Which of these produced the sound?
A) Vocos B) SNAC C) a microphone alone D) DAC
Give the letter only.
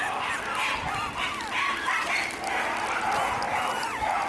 C